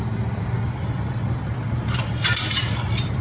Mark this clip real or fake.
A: fake